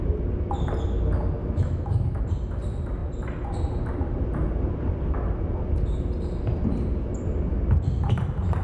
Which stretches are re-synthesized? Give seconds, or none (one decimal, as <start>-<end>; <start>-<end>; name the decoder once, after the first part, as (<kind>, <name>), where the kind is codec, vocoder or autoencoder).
1.4-2.2 (autoencoder, DAC-VAE)